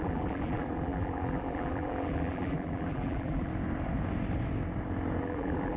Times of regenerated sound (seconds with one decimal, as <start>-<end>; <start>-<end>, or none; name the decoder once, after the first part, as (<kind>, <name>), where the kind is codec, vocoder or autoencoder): 0.0-3.5 (vocoder, BigVGAN v2); 5.2-5.8